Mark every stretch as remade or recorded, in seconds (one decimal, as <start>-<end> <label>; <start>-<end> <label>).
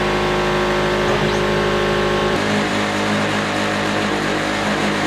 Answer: 0.0-2.2 recorded; 2.2-5.1 remade